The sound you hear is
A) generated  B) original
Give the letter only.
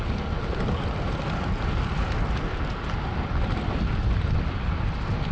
B